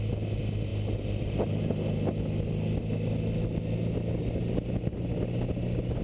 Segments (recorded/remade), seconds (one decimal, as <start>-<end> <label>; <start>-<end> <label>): 0.0-6.0 recorded